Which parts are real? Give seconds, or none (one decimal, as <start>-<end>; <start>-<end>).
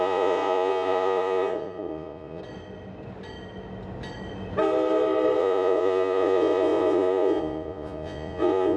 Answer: 2.4-5.4